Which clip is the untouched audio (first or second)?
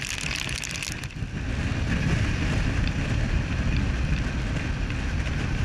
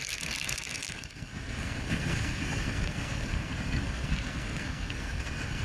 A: first